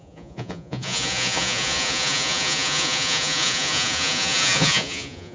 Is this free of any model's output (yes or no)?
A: no